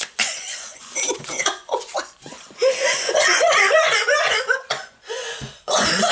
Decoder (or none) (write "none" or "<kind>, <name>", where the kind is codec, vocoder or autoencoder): vocoder, Vocos